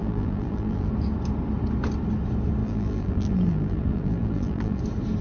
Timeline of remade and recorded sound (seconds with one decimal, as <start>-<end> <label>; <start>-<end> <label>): 0.0-0.9 remade; 0.9-2.6 recorded; 2.6-4.8 remade; 4.8-5.2 recorded